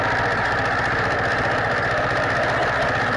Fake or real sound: real